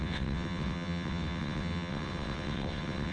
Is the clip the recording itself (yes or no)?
no